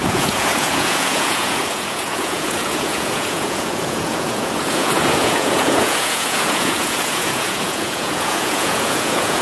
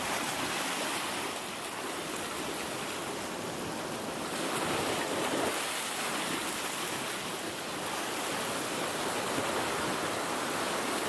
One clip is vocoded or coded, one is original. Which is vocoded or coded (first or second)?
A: first